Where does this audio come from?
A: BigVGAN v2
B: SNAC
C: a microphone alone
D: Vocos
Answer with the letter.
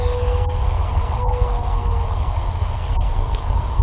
B